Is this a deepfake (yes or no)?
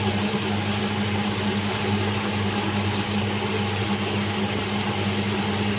no